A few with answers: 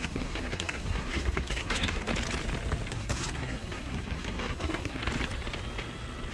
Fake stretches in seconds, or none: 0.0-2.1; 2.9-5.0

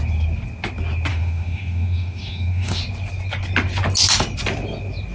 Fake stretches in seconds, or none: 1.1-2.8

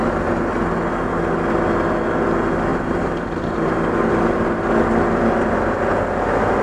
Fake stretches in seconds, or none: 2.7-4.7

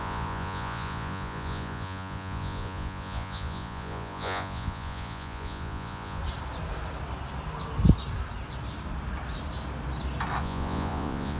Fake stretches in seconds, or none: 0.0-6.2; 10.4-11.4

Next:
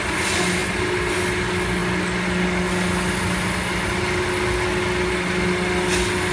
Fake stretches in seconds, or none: none

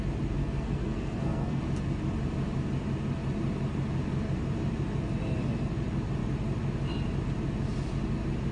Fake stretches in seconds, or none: 0.4-1.6

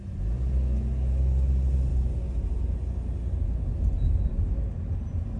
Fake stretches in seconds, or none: none